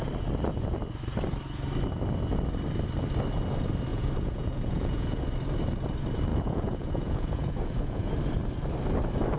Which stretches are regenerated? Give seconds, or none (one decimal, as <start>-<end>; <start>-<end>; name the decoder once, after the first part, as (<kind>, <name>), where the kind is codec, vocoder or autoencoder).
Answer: 3.9-5.2 (vocoder, Vocos); 6.3-8.1